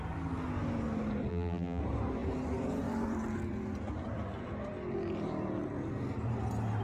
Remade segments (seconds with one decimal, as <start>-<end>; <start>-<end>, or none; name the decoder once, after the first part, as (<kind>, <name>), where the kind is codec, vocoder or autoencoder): 1.3-1.8 (vocoder, BigVGAN v2)